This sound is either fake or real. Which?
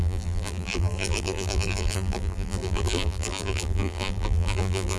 fake